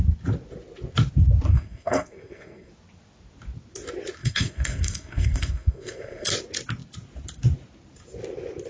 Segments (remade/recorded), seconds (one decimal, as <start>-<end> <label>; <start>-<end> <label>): 0.0-1.5 recorded; 1.5-2.7 remade; 2.7-4.2 recorded; 4.2-6.3 remade; 6.3-8.7 recorded